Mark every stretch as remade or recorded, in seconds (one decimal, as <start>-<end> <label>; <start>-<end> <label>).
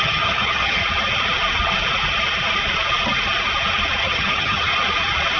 0.0-0.8 remade; 0.8-4.0 recorded; 4.0-4.7 remade; 4.7-5.4 recorded